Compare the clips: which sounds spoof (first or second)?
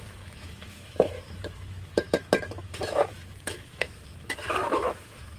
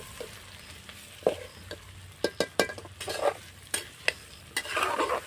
first